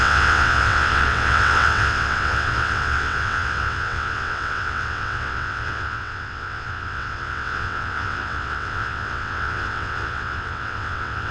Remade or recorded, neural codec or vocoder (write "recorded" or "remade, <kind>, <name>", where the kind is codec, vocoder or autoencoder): remade, vocoder, WaveNeXt